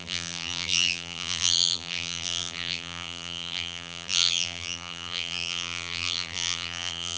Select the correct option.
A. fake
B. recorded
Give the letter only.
A